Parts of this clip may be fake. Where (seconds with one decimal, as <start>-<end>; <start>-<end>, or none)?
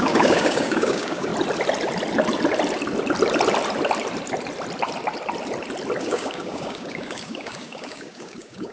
0.0-1.3; 6.0-8.7